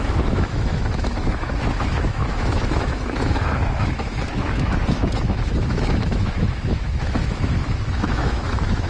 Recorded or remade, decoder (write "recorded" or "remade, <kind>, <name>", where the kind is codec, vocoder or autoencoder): remade, autoencoder, DAC-VAE